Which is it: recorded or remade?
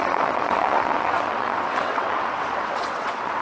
remade